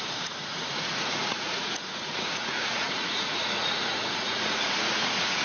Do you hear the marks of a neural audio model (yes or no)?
yes